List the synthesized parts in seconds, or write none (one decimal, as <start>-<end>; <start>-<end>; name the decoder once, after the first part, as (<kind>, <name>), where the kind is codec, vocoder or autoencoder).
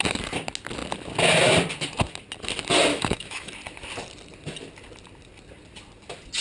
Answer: 2.9-3.5 (autoencoder, DAC-VAE)